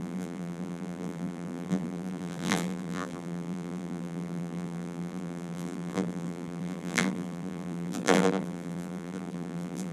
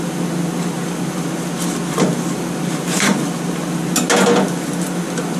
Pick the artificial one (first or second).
first